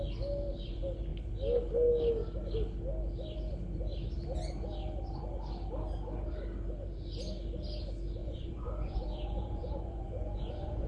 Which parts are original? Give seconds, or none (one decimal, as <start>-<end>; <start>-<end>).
0.0-8.2